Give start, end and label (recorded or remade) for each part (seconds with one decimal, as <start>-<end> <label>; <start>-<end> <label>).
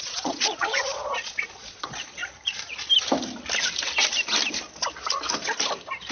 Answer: 0.0-2.2 remade; 2.2-6.1 recorded